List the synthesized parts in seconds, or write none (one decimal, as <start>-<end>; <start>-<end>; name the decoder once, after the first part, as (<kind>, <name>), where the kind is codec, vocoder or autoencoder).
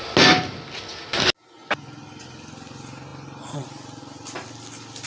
none